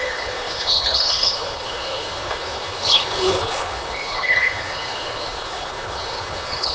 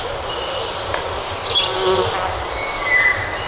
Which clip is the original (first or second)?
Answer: second